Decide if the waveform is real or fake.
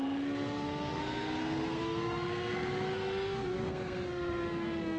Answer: fake